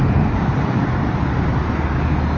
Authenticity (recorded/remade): recorded